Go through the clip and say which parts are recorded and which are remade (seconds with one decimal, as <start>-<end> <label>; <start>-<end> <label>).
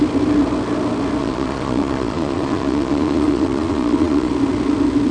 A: 0.0-1.2 recorded; 1.2-4.3 remade; 4.3-5.1 recorded